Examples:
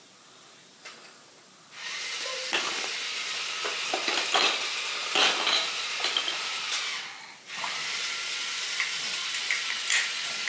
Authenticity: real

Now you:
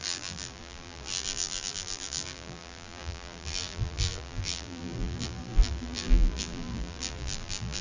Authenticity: fake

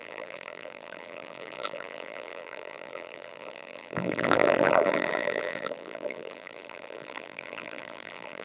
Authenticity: fake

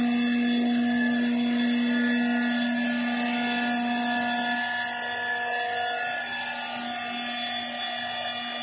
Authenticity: real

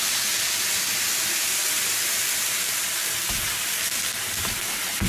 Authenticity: fake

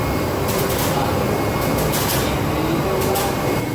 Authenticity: real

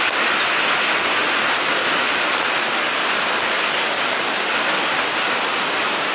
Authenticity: real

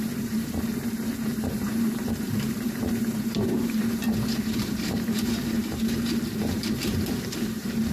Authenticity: fake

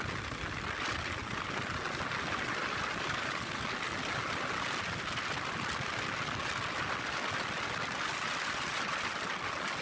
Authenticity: real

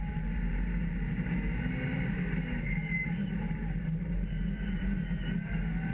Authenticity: fake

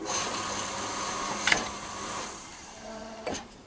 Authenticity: fake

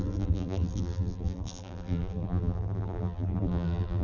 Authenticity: fake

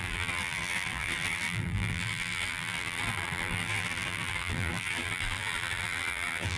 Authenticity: fake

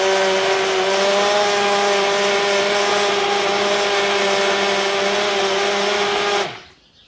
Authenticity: real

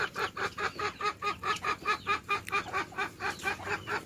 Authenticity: fake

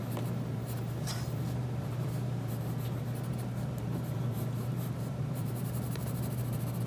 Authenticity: fake